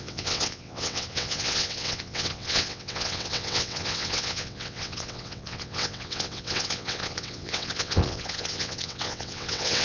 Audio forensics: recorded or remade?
remade